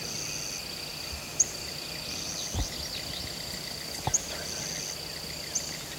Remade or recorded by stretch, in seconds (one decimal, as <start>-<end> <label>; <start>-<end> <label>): 0.0-6.0 recorded